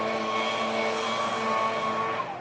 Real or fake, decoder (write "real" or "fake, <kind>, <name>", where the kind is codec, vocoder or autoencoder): real